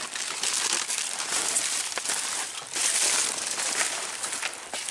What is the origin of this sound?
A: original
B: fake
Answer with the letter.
A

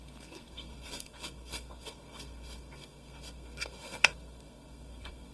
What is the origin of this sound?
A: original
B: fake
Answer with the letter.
B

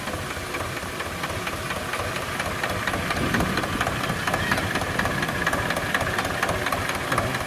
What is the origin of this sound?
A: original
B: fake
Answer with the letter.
A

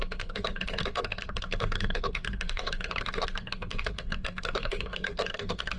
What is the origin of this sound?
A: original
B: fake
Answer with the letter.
B